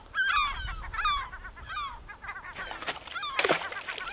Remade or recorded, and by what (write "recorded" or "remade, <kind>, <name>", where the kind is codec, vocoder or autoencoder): recorded